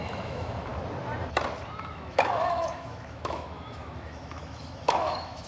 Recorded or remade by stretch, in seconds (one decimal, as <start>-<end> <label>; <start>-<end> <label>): 0.0-0.7 remade; 0.7-1.8 recorded; 1.8-5.5 remade